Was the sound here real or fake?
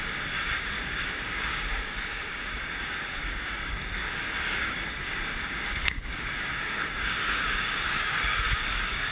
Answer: fake